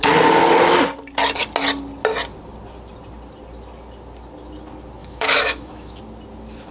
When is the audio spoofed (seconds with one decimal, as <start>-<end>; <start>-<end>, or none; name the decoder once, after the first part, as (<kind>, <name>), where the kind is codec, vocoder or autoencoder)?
5.0-6.0 (autoencoder, DAC-VAE)